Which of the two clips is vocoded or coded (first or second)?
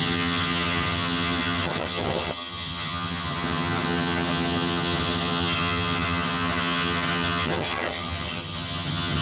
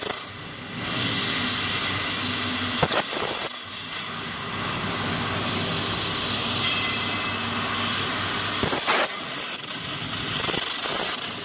first